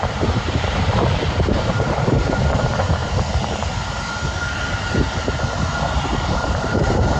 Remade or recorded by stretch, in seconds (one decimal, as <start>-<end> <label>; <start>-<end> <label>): 0.0-3.0 remade; 3.0-6.1 recorded; 6.1-7.2 remade